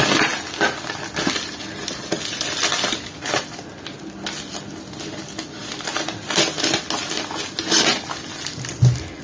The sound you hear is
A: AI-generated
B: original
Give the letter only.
B